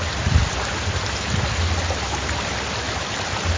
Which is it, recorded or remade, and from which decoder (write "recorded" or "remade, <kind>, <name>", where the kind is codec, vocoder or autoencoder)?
recorded